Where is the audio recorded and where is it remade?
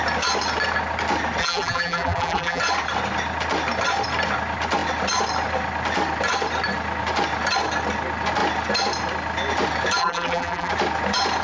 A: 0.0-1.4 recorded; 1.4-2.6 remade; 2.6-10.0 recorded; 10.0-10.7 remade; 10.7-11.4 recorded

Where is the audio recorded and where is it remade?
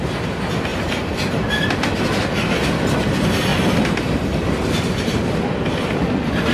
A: 0.0-3.5 recorded; 3.5-5.9 remade; 5.9-6.5 recorded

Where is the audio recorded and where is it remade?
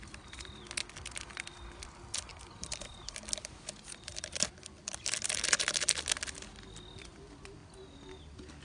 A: 0.0-2.3 recorded; 2.3-5.4 remade; 5.4-8.6 recorded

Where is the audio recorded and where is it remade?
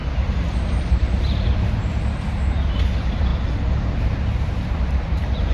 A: 0.0-0.6 recorded; 0.6-3.3 remade; 3.3-4.0 recorded; 4.0-5.5 remade